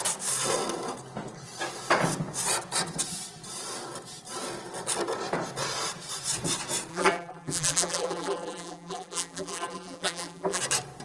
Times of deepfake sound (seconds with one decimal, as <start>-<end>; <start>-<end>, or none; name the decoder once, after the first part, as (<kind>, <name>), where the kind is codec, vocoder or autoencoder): 6.9-10.6 (vocoder, BigVGAN v2)

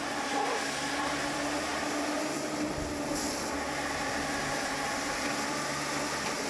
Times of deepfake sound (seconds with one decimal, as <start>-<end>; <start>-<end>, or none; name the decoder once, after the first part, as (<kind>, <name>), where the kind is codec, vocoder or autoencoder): none

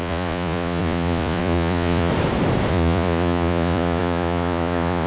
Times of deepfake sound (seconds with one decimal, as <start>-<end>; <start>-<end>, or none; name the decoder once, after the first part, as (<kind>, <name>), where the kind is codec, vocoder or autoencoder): 0.0-2.1 (vocoder, Vocos); 2.7-5.1

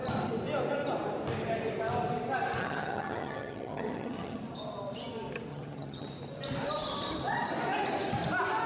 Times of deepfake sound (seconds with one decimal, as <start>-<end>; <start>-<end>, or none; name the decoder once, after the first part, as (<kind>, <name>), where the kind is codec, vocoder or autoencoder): 2.6-4.4 (vocoder, HiFi-GAN); 5.5-6.1